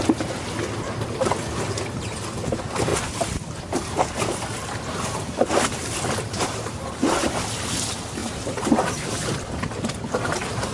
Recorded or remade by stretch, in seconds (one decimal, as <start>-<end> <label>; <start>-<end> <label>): 0.0-8.2 recorded; 8.2-9.3 remade; 9.3-10.7 recorded